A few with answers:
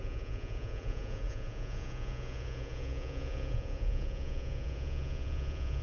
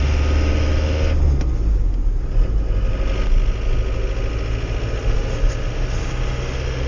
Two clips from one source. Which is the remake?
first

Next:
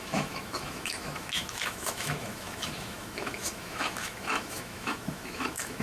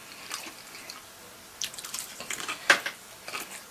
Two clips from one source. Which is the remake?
first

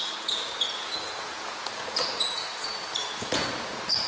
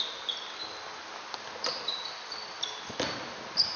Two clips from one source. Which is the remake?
first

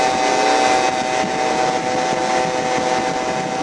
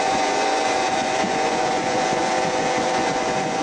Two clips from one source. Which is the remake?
second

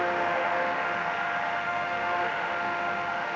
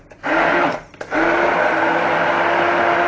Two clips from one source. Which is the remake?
first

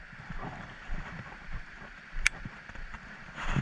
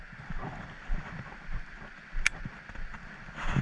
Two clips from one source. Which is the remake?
first